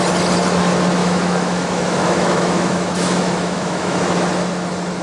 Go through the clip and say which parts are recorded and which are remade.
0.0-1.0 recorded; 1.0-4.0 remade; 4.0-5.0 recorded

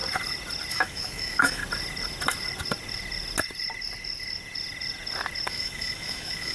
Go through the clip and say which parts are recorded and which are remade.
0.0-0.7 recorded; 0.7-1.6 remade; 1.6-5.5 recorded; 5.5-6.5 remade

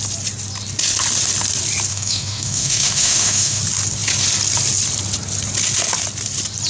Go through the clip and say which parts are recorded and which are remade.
0.0-1.9 recorded; 1.9-3.6 remade; 3.6-6.7 recorded

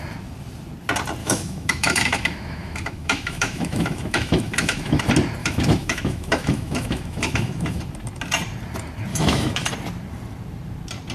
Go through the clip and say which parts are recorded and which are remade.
0.0-1.2 recorded; 1.2-5.0 remade; 5.0-5.4 recorded; 5.4-7.8 remade; 7.8-9.1 recorded; 9.1-9.7 remade; 9.7-11.1 recorded